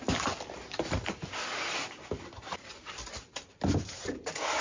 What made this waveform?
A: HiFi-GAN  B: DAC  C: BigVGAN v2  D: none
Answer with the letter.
D